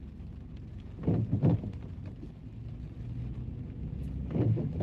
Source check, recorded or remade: recorded